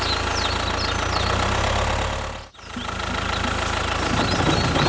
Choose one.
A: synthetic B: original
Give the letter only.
B